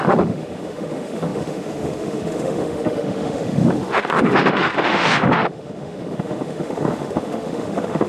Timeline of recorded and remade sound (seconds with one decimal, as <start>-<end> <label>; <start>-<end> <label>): 0.0-8.1 remade